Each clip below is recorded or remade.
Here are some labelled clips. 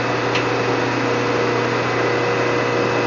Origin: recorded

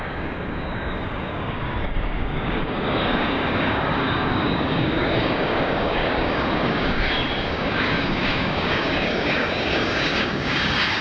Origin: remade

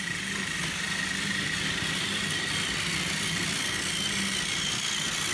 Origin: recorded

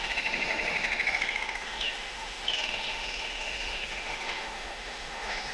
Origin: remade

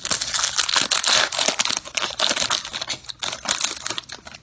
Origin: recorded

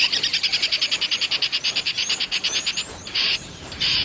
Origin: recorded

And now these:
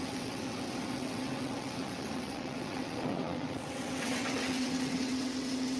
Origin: remade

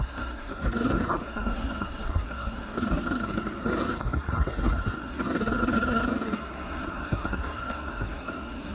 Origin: remade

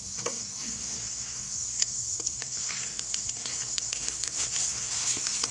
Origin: remade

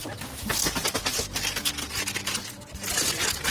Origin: recorded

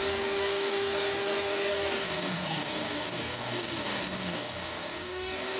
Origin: remade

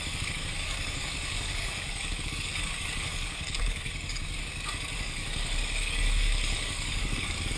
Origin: remade